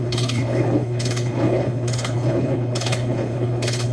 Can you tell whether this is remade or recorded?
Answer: remade